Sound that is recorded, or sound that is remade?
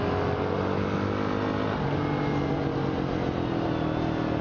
recorded